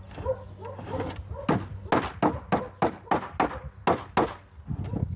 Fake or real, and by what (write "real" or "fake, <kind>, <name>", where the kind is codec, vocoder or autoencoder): real